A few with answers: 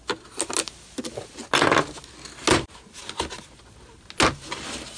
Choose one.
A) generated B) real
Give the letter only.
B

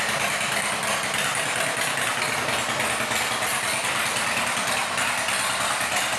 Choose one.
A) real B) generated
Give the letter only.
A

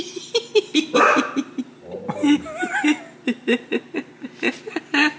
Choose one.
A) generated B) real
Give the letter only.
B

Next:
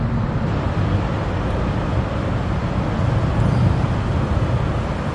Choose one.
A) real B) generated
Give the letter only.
A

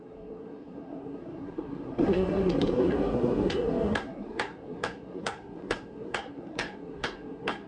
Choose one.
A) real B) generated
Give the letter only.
B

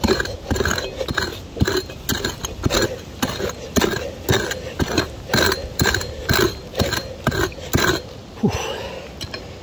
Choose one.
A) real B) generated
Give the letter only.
A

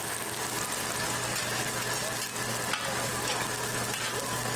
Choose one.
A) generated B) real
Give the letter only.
B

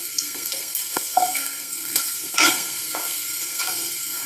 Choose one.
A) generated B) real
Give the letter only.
A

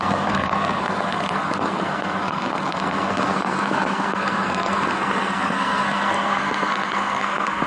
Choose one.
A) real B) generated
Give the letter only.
B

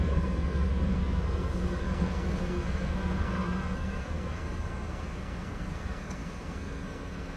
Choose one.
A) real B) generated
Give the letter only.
B